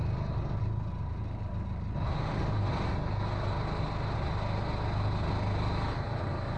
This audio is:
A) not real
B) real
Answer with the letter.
B